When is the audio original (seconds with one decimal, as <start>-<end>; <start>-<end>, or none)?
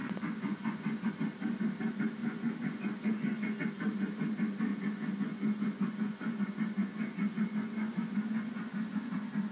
1.1-2.2; 3.6-4.7